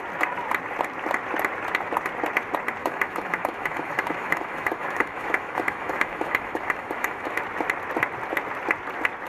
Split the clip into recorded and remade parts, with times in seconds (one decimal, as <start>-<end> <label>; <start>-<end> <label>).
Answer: 0.0-2.8 recorded; 2.8-7.4 remade; 7.4-9.3 recorded